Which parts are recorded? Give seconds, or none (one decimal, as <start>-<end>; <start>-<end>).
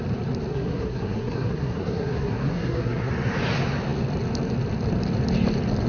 0.0-0.5; 3.1-5.9